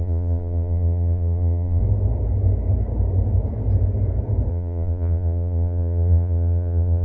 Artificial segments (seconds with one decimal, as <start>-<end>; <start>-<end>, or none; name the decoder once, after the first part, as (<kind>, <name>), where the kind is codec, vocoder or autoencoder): 0.0-1.8 (vocoder, Vocos); 4.5-7.0